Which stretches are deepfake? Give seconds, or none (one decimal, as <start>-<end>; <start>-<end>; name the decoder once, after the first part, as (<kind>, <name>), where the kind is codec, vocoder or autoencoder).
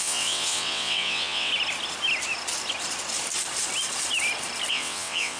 0.0-1.5 (vocoder, WaveNeXt); 4.7-5.4